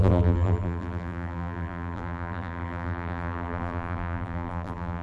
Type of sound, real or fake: fake